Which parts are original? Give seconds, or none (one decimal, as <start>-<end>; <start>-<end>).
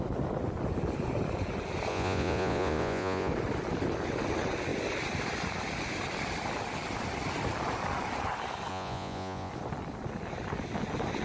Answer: 0.0-1.9; 3.3-8.7; 9.5-11.2